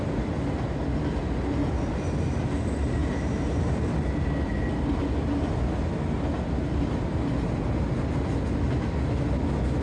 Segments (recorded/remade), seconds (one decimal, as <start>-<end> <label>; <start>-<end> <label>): 0.0-3.0 recorded; 3.0-3.8 remade; 3.8-9.8 recorded